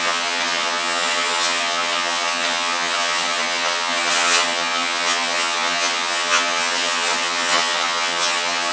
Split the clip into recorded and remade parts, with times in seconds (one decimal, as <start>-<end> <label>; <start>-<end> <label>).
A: 0.0-8.7 remade